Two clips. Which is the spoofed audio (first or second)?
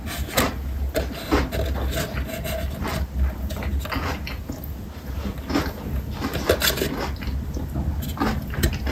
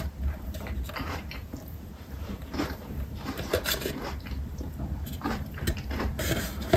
second